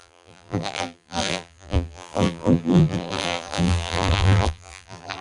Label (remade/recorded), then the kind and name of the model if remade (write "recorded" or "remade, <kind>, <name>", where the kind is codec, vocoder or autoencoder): remade, vocoder, BigVGAN v2